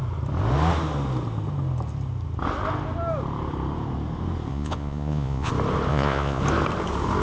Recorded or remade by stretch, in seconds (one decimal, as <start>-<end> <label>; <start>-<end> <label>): 0.0-4.5 recorded; 4.5-5.5 remade; 5.5-5.9 recorded; 5.9-6.4 remade; 6.4-7.2 recorded